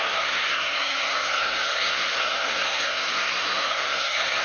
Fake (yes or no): yes